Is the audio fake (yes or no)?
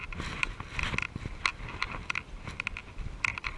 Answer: no